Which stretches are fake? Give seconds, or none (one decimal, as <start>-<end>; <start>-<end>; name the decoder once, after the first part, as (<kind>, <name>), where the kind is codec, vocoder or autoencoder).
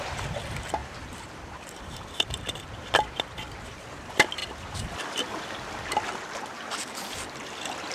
0.8-2.7 (vocoder, BigVGAN v2); 4.4-6.8